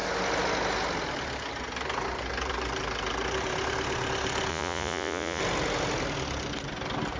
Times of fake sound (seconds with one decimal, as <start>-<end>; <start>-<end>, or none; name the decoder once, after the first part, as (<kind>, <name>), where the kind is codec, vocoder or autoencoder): 4.5-5.4 (vocoder, Vocos)